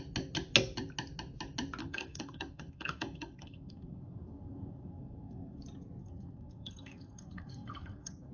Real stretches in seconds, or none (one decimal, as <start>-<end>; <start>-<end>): 0.0-1.8; 5.6-6.0